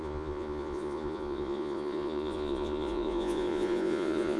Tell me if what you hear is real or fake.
fake